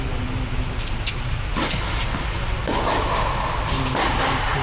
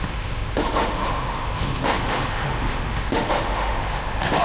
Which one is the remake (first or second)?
second